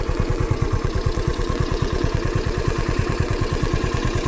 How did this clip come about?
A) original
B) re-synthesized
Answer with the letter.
B